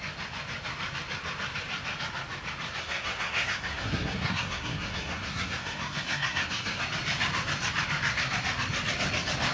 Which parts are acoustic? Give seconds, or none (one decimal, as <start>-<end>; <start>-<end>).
0.0-2.8; 6.8-9.5

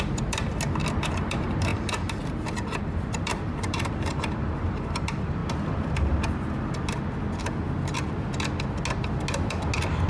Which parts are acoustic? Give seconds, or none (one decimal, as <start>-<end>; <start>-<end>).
0.5-1.0; 5.4-10.1

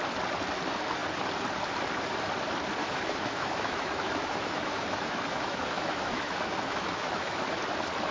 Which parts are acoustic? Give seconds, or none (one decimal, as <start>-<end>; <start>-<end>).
0.0-2.8; 7.6-8.1

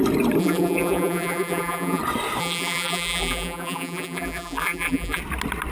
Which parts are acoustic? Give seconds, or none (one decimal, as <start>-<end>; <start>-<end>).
0.0-0.4; 2.0-2.4; 5.2-5.7

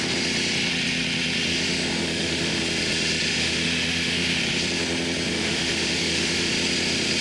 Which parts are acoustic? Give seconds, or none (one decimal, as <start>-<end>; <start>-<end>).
0.0-1.5; 2.6-3.3; 4.4-5.3; 6.5-7.2

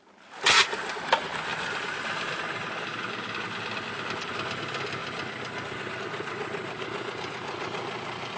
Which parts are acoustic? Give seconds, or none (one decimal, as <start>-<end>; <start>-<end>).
0.0-8.4